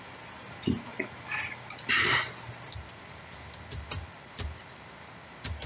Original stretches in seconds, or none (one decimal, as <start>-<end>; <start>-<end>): 0.9-1.9